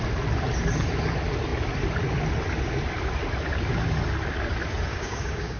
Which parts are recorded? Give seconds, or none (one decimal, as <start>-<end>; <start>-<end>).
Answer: 0.0-4.9